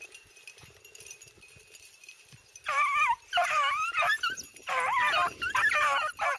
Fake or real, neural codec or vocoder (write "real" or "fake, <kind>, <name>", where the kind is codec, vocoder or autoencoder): fake, vocoder, BigVGAN v2